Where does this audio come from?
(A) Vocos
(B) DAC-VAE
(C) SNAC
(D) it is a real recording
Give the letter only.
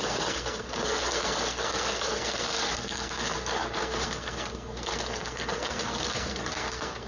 C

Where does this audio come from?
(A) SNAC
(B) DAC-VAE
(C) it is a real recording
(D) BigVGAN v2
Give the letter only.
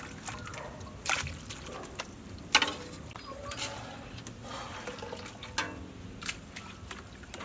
C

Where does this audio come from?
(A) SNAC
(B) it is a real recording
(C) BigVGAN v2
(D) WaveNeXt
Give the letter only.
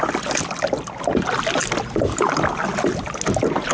B